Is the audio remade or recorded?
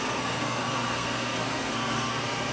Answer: remade